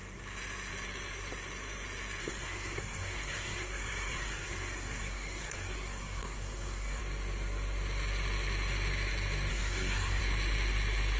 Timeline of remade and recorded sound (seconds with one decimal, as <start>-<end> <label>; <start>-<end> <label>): 0.0-2.2 recorded; 2.2-7.0 remade; 7.0-9.5 recorded; 9.5-10.2 remade; 10.2-11.2 recorded